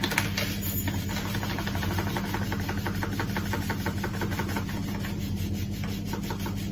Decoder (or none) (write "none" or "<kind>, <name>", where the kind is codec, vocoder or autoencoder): none